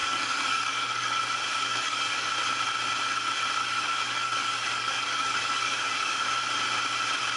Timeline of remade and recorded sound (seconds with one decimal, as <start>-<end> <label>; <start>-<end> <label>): 0.0-1.2 remade; 1.2-1.7 recorded; 1.7-2.3 remade; 2.3-3.6 recorded; 3.6-6.3 remade; 6.3-7.4 recorded